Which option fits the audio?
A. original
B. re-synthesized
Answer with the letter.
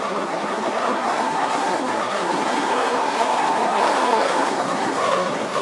B